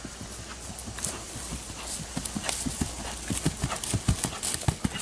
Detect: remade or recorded recorded